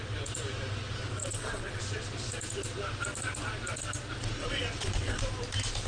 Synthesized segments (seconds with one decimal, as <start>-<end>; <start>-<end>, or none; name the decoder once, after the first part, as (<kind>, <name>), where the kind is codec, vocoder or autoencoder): 1.2-1.8 (vocoder, WaveNeXt); 4.4-5.2